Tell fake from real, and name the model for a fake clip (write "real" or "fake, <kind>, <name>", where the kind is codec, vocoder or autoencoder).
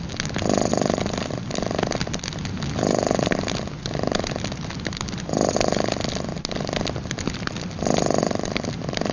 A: real